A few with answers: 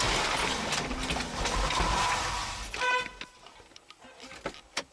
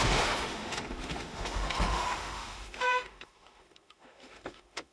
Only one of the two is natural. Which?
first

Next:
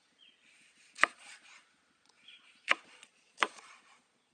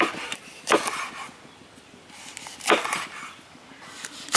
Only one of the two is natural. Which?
second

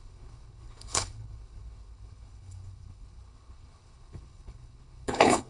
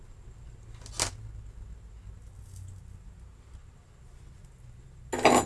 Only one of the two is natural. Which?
second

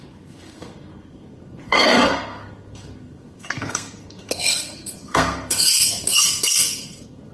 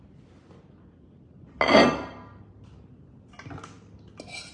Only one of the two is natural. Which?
second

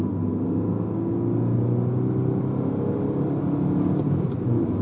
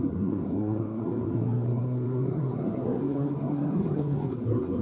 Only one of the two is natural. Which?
first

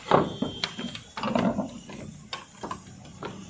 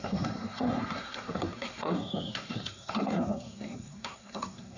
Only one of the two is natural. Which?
first